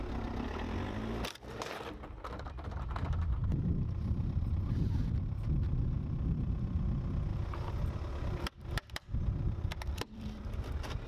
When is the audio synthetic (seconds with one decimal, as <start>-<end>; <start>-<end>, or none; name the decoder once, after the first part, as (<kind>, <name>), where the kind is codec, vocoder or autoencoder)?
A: 3.4-6.5 (vocoder, BigVGAN v2); 7.3-10.6